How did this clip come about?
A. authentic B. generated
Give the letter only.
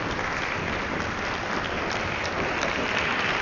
B